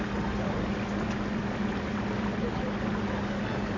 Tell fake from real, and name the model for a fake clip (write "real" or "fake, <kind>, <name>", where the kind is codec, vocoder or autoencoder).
real